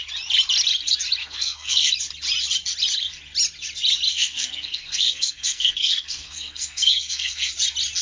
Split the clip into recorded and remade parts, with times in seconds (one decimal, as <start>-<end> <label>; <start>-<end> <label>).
0.0-1.2 recorded; 1.2-1.9 remade; 1.9-4.1 recorded; 4.1-7.5 remade; 7.5-8.0 recorded